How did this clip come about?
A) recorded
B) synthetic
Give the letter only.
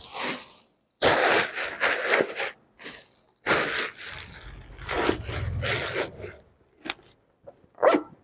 A